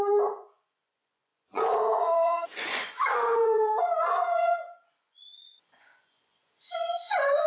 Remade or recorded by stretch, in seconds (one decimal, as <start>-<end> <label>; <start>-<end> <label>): 0.0-7.5 remade